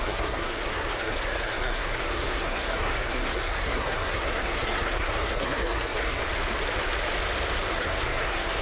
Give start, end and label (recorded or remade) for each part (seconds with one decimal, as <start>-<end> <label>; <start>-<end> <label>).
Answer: 0.0-6.2 remade; 6.2-7.7 recorded; 7.7-8.6 remade